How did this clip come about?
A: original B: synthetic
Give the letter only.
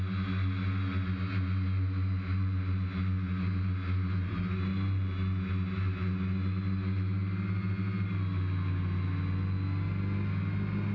A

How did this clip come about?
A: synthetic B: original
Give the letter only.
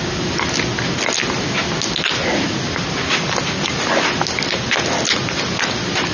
B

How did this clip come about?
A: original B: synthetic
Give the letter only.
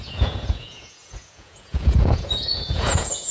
B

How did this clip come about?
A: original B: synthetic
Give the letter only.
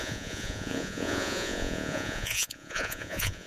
B